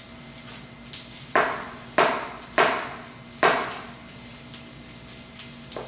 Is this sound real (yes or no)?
yes